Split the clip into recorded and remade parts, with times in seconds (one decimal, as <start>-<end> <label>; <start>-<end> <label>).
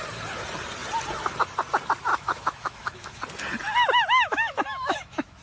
0.0-2.1 recorded; 2.1-3.2 remade; 3.2-4.3 recorded; 4.3-5.4 remade